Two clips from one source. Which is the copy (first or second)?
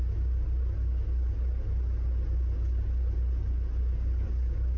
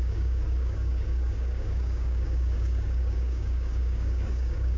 second